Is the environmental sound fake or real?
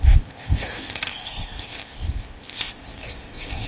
fake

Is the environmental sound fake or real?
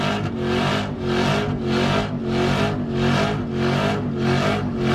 real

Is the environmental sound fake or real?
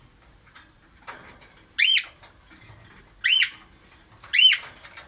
real